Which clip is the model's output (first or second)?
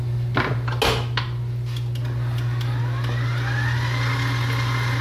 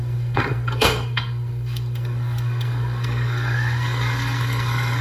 second